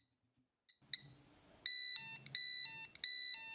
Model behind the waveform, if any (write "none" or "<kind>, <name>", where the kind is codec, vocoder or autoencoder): none